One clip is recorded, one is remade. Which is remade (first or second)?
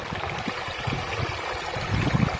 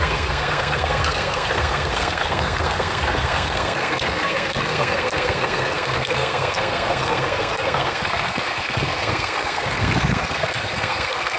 second